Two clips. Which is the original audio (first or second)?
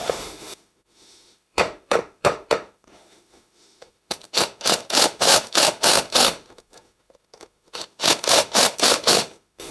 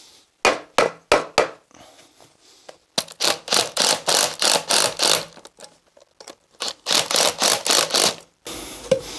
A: second